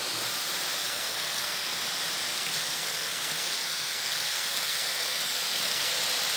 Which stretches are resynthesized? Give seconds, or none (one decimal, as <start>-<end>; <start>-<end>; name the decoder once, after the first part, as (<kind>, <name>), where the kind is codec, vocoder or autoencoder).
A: 0.8-1.8 (codec, SNAC); 2.3-5.9

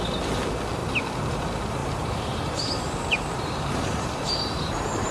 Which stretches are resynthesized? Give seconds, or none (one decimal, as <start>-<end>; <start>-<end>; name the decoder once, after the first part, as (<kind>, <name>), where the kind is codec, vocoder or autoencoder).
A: 1.8-5.1 (vocoder, BigVGAN v2)

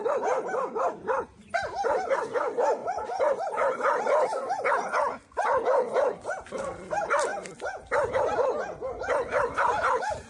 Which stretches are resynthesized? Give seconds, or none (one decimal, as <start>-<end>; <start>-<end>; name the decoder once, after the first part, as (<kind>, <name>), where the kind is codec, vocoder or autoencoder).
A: 2.8-4.0 (vocoder, BigVGAN v2)